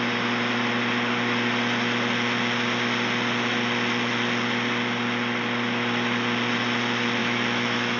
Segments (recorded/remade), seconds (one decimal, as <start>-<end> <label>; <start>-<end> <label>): 0.0-7.2 recorded; 7.2-8.0 remade